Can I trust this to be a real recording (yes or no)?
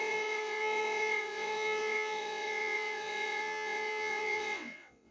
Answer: no